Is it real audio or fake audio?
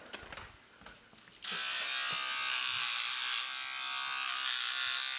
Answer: real